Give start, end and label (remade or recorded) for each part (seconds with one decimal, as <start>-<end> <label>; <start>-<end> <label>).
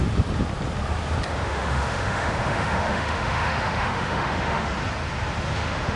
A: 0.0-1.3 recorded; 1.3-4.7 remade; 4.7-5.5 recorded; 5.5-6.0 remade